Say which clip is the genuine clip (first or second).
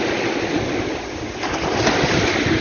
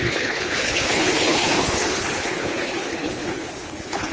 first